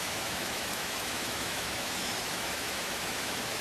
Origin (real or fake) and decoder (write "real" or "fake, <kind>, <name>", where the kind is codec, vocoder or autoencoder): fake, autoencoder, DAC-VAE